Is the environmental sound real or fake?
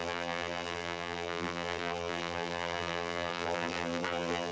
fake